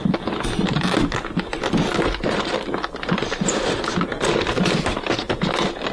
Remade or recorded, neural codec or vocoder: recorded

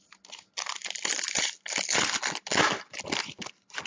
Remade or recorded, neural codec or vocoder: recorded